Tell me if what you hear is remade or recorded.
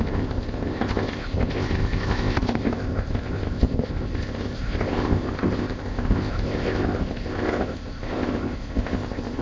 remade